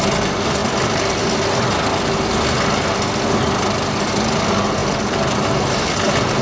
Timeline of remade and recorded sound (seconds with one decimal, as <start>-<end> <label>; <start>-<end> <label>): 0.0-6.4 recorded